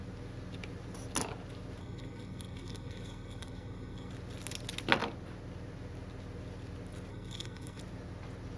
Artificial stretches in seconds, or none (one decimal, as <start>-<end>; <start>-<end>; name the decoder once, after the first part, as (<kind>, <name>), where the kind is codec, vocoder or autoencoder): 1.8-4.1 (codec, SNAC); 7.1-7.8